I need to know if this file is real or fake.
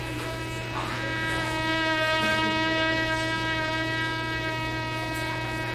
fake